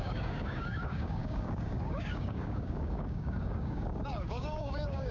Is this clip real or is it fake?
fake